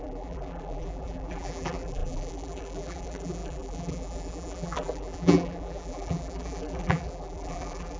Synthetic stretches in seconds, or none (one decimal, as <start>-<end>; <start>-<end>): 0.0-8.0